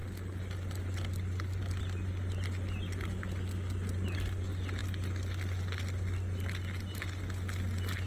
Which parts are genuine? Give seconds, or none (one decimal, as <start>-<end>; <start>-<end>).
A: 0.0-8.1